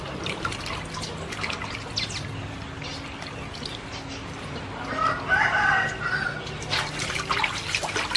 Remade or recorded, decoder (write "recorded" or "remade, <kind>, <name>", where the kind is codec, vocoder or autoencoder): recorded